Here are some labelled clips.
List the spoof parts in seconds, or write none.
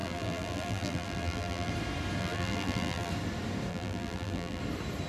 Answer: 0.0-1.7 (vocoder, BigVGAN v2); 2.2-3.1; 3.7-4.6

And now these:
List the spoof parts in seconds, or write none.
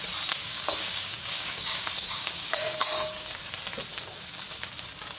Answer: 0.4-3.5 (codec, DAC); 3.9-4.8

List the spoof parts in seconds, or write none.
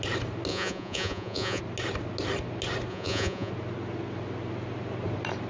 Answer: 0.5-1.6 (vocoder, Vocos); 2.9-3.5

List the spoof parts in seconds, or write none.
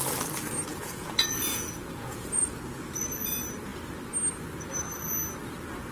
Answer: 0.7-2.5 (vocoder, Vocos)